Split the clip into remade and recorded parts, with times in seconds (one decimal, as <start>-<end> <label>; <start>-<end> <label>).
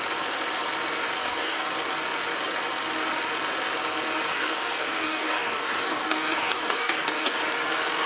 0.0-1.2 recorded; 1.2-1.7 remade; 1.7-4.3 recorded; 4.3-7.4 remade; 7.4-8.1 recorded